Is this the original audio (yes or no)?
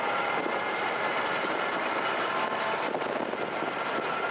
yes